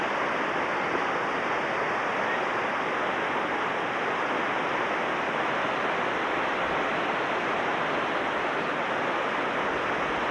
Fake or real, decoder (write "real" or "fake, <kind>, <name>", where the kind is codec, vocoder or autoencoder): real